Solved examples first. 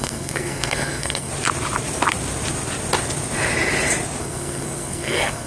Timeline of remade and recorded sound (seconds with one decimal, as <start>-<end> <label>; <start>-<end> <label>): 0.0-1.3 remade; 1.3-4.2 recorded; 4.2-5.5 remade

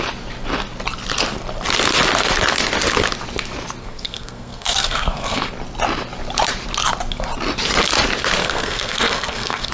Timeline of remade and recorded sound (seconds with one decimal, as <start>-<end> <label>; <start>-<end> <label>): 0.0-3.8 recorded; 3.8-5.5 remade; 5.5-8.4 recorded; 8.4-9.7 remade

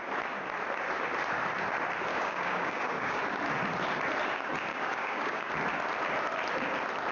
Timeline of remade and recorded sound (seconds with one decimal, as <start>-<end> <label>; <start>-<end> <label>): 0.0-2.1 recorded; 2.1-3.2 remade; 3.2-4.7 recorded; 4.7-5.5 remade; 5.5-7.1 recorded

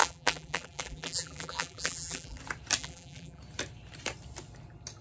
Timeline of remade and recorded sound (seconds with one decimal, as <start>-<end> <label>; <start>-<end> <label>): 0.0-2.4 remade; 2.4-2.8 recorded; 2.8-3.4 remade; 3.4-5.0 recorded

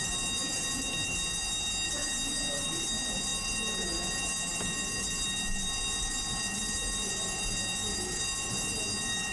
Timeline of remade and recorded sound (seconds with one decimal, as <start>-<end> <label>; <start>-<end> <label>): 0.0-9.3 recorded

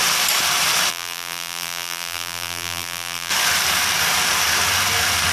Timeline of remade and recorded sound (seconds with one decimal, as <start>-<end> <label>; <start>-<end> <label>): 0.0-0.9 recorded; 0.9-3.3 remade; 3.3-5.3 recorded